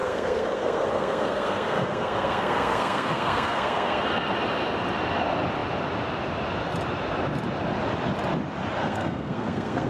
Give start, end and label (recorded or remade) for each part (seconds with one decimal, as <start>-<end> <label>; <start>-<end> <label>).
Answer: 0.0-4.0 remade; 4.0-8.8 recorded; 8.8-9.9 remade